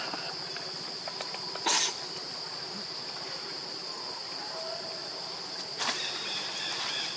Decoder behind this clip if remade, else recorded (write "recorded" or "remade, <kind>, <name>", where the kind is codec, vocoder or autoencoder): recorded